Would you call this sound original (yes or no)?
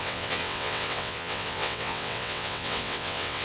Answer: no